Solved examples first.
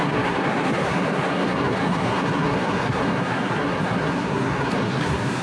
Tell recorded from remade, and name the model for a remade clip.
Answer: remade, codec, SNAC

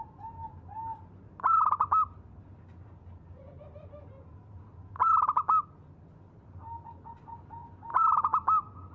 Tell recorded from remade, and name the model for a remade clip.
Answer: recorded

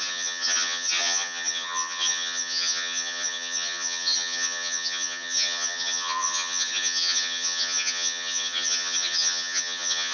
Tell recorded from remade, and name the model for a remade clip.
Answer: remade, vocoder, HiFi-GAN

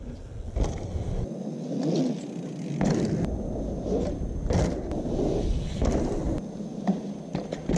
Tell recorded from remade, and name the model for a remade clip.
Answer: recorded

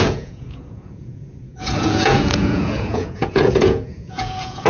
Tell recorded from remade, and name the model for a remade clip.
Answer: remade, vocoder, Vocos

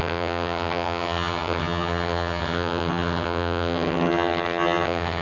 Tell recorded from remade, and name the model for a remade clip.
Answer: remade, vocoder, HiFi-GAN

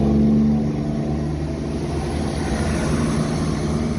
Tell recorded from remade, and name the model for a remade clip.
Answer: recorded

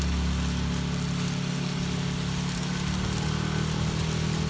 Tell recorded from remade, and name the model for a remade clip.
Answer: recorded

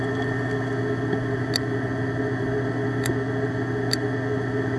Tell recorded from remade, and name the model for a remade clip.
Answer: recorded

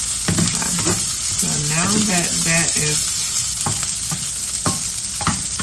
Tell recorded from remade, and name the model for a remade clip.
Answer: recorded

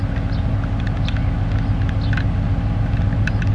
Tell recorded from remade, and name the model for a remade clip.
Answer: recorded